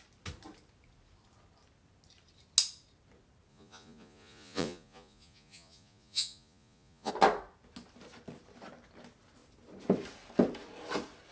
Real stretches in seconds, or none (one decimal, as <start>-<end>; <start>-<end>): 0.0-3.5; 7.1-11.3